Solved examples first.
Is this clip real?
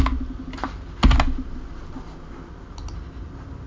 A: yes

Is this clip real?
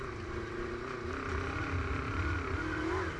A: yes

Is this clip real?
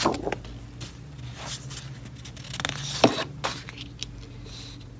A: yes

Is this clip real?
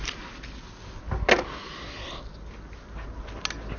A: yes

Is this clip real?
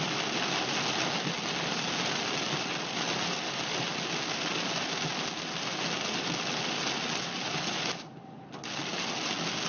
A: yes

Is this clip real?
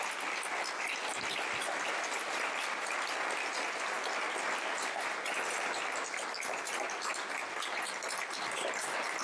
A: yes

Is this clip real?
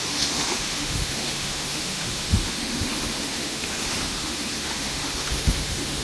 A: no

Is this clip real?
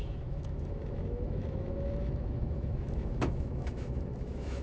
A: no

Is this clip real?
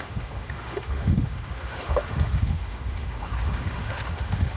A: no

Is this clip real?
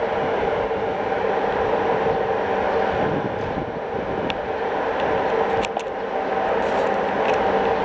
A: yes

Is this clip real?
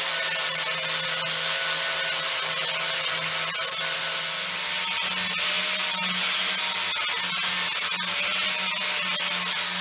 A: yes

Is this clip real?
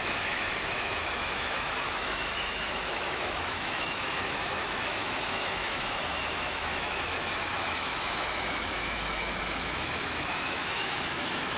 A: no